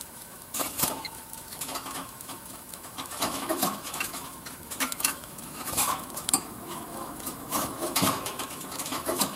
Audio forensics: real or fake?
fake